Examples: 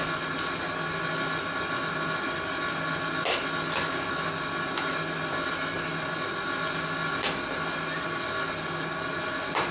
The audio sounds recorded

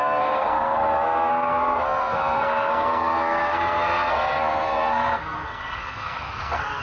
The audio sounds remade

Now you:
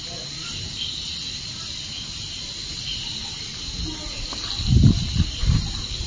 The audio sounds recorded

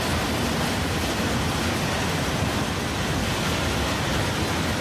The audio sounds recorded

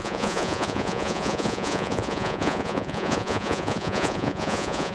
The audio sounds remade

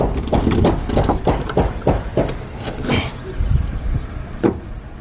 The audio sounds recorded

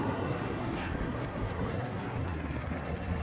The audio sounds remade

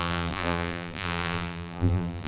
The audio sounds remade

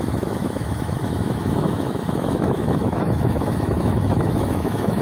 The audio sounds remade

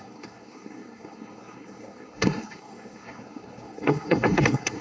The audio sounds remade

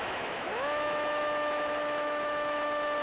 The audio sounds remade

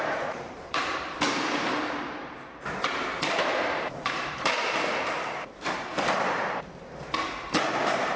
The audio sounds remade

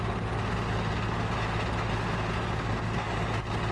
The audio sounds recorded